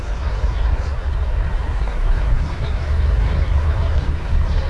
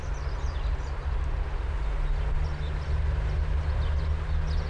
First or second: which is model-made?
first